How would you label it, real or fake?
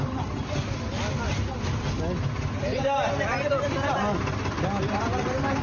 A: real